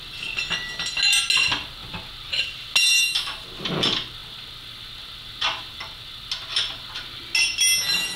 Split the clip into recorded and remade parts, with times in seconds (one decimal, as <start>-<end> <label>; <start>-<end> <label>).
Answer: 0.0-8.2 recorded